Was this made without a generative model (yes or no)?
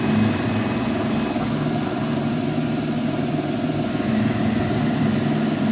no